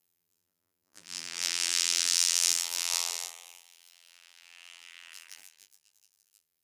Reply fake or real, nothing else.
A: fake